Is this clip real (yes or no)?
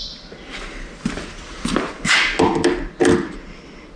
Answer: yes